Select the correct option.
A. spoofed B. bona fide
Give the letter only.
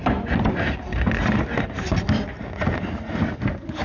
B